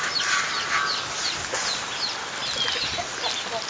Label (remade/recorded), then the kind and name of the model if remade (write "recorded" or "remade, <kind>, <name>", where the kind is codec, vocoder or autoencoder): recorded